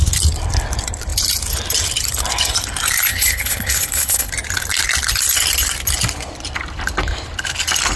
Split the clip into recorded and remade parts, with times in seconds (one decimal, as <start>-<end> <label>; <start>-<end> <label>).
0.0-3.1 recorded; 3.1-4.3 remade; 4.3-8.0 recorded